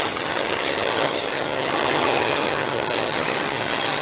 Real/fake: fake